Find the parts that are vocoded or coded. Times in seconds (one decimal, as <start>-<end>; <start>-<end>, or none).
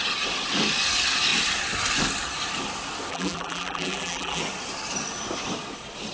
3.1-4.4